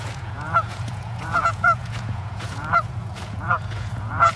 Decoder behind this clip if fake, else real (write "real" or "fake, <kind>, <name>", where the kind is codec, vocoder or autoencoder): fake, vocoder, Vocos